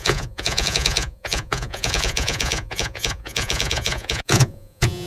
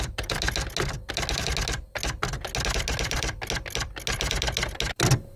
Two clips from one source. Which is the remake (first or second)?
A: first